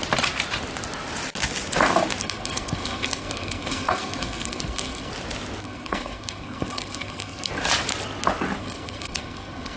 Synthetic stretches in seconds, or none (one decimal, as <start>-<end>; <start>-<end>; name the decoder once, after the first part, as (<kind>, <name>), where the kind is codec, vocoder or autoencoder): 2.2-5.1 (codec, SNAC); 5.6-7.5; 8.6-9.8